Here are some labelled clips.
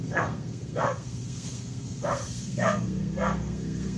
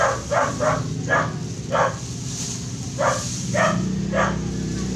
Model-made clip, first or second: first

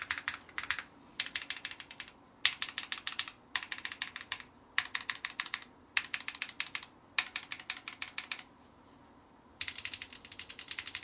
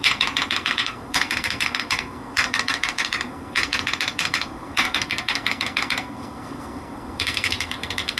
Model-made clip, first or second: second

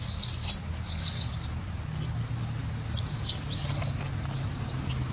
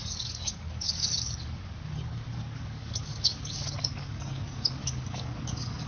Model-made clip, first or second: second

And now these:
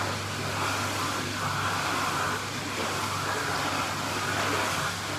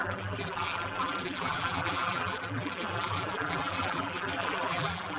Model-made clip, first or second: second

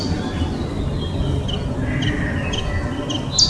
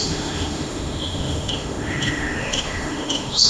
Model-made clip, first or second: second